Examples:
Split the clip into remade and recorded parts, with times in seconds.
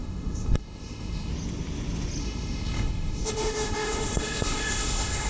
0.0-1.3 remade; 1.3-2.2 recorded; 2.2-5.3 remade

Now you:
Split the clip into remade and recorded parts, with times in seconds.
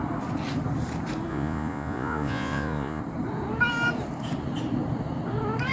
0.0-1.3 recorded; 1.3-3.0 remade; 3.0-5.7 recorded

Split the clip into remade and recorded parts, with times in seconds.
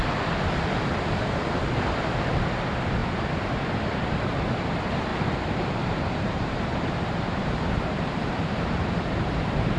0.0-3.0 recorded; 3.0-4.5 remade; 4.5-5.1 recorded; 5.1-9.8 remade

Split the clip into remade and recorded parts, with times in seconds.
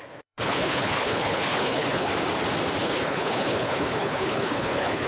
0.0-2.1 remade; 2.1-2.8 recorded; 2.8-5.1 remade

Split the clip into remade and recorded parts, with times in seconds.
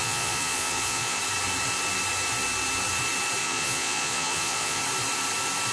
0.0-1.2 remade; 1.2-3.4 recorded; 3.4-4.8 remade; 4.8-5.7 recorded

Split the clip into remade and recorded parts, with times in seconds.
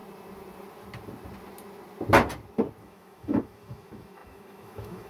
0.0-2.8 recorded; 2.8-5.1 remade